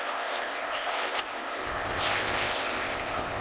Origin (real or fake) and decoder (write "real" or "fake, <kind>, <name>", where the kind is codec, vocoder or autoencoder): fake, codec, ZipCodec